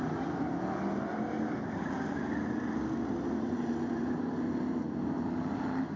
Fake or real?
real